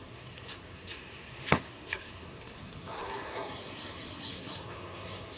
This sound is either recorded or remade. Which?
remade